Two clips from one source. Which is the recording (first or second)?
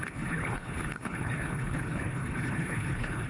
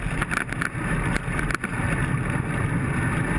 second